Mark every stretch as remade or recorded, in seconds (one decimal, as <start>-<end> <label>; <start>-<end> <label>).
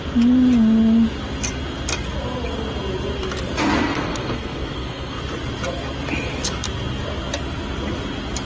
0.0-3.8 recorded; 3.8-5.2 remade; 5.2-8.4 recorded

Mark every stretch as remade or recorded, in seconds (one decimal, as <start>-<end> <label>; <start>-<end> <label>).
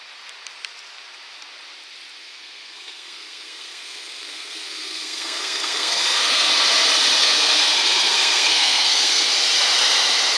0.0-2.2 recorded; 2.2-6.5 remade; 6.5-7.2 recorded; 7.2-9.2 remade; 9.2-10.4 recorded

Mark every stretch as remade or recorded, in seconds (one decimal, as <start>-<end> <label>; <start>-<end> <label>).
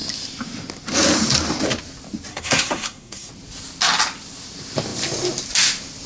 0.0-2.3 recorded; 2.3-3.3 remade; 3.3-6.1 recorded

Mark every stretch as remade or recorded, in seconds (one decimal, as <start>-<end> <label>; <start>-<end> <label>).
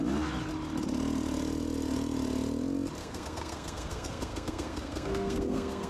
0.0-3.0 recorded; 3.0-5.9 remade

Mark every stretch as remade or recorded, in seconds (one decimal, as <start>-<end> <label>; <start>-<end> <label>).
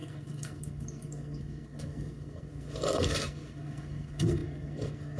0.0-5.2 remade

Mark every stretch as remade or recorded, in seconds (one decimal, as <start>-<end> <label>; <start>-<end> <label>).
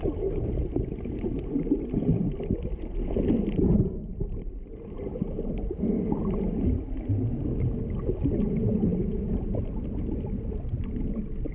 0.0-11.5 recorded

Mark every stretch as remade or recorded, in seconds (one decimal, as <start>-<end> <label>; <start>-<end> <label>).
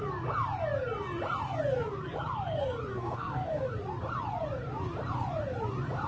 0.0-2.9 recorded; 2.9-3.7 remade; 3.7-6.1 recorded